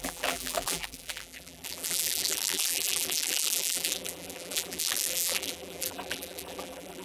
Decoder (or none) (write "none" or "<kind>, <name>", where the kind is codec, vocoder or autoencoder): vocoder, BigVGAN v2